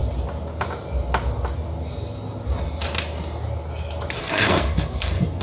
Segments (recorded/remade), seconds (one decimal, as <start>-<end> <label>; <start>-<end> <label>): 0.0-4.2 recorded; 4.2-5.4 remade